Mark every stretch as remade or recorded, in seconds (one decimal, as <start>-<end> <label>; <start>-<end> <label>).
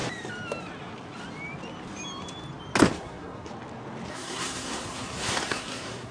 0.0-3.0 recorded; 3.0-3.5 remade; 3.5-4.1 recorded; 4.1-6.1 remade